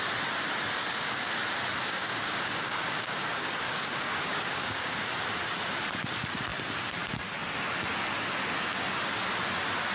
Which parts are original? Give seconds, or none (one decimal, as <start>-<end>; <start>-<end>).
0.0-0.8; 1.3-1.8; 5.0-9.9